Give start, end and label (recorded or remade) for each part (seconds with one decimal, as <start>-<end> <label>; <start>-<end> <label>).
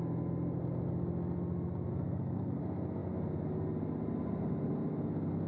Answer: 0.0-1.9 recorded; 1.9-2.6 remade; 2.6-5.5 recorded